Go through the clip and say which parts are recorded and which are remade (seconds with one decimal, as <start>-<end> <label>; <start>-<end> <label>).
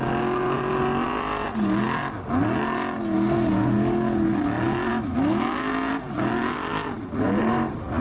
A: 0.0-4.9 recorded; 4.9-5.7 remade; 5.7-8.0 recorded